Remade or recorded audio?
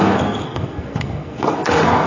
remade